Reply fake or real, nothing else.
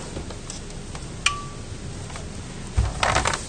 real